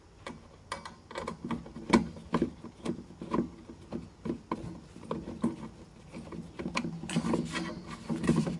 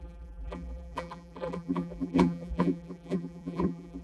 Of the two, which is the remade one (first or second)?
second